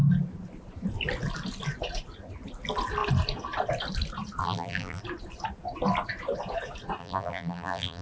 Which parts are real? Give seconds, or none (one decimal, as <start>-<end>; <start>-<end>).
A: 0.0-4.4; 5.0-7.0